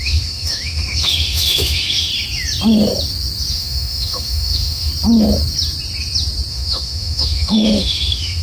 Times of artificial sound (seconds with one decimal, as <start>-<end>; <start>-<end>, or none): 0.0-2.1; 3.5-4.9; 6.5-8.4